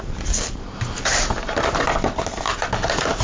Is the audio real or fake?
real